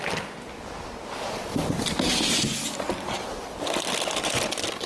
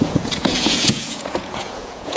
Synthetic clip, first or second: second